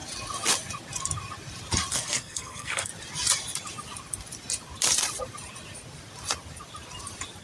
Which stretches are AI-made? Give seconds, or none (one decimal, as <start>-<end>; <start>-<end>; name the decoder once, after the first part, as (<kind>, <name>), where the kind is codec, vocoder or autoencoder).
1.9-2.9 (codec, SNAC)